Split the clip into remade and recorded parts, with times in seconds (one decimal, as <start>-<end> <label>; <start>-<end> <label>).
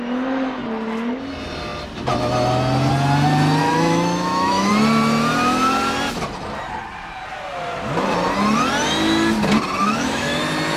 0.0-3.6 recorded; 3.6-4.7 remade; 4.7-9.8 recorded; 9.8-10.4 remade; 10.4-10.8 recorded